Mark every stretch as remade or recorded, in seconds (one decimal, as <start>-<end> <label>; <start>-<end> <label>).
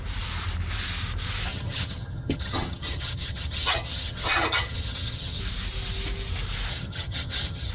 0.0-1.5 recorded; 1.5-5.4 remade; 5.4-6.7 recorded; 6.7-7.7 remade